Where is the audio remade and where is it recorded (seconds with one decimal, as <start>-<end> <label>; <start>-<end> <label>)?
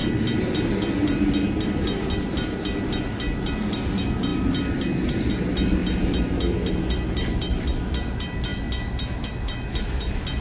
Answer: 0.0-10.4 recorded